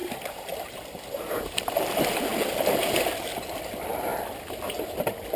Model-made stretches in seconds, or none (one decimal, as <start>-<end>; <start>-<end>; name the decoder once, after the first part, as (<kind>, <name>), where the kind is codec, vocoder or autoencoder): 0.0-1.6 (vocoder, BigVGAN v2)